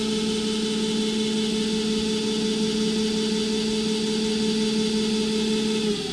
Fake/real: real